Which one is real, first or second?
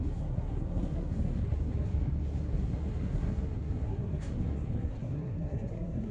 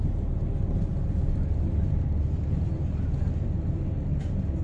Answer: second